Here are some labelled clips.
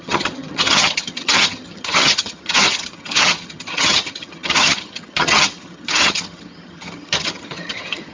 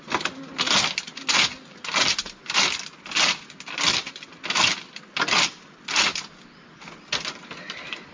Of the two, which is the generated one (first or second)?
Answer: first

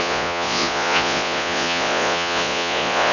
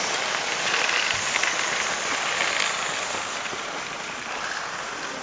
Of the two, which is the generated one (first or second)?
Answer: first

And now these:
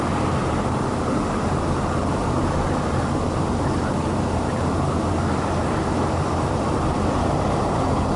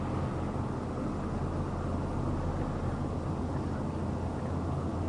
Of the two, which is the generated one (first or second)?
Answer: first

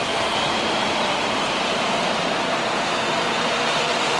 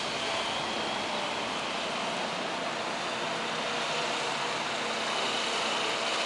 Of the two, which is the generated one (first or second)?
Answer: first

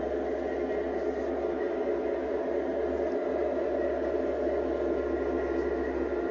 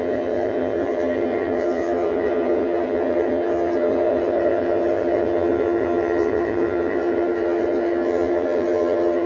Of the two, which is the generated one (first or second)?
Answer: second